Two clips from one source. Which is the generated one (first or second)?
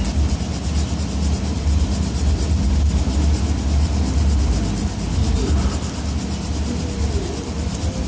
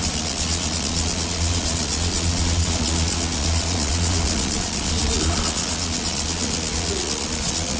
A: second